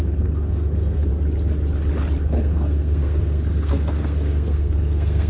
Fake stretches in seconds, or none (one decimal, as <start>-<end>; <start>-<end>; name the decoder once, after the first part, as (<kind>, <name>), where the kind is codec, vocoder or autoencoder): 0.0-1.1 (codec, SNAC); 2.2-5.3